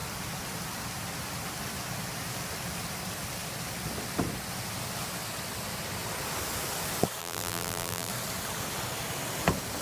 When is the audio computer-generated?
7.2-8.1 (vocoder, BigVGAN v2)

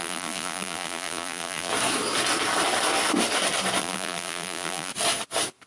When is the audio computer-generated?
0.0-1.7 (vocoder, BigVGAN v2); 3.8-4.9

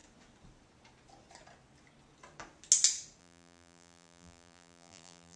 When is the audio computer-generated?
3.2-5.4 (vocoder, BigVGAN v2)

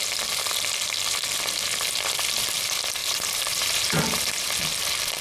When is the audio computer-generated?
3.0-4.5 (vocoder, BigVGAN v2)

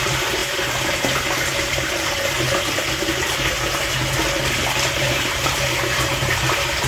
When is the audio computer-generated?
0.0-0.4 (vocoder, BigVGAN v2); 4.5-6.9